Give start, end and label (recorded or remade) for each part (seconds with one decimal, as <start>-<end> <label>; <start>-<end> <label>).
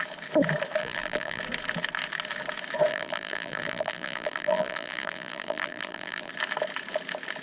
0.0-0.8 recorded; 0.8-1.4 remade; 1.4-2.9 recorded; 2.9-6.3 remade; 6.3-7.4 recorded